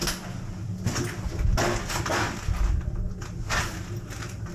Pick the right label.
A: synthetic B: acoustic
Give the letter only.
B